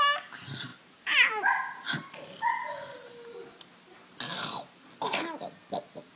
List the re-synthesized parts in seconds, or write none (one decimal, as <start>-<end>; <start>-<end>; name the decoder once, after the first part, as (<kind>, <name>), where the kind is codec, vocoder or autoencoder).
0.7-1.6 (vocoder, BigVGAN v2); 4.3-4.9